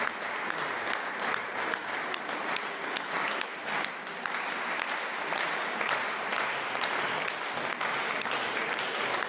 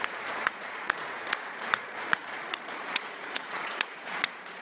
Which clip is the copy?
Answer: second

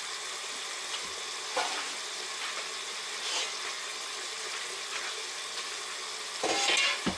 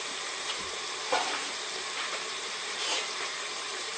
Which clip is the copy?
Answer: second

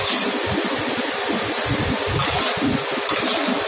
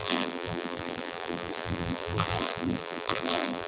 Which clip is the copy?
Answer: second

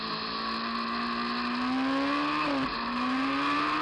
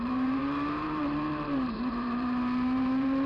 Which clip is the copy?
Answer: second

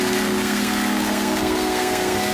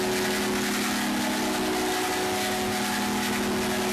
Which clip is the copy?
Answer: first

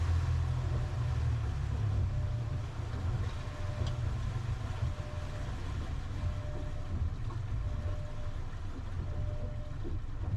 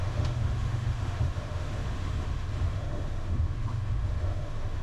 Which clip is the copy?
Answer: second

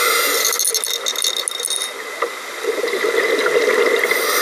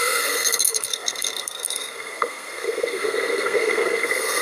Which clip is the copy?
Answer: second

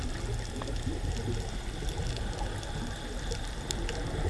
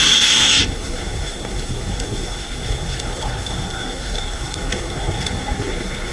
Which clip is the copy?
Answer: second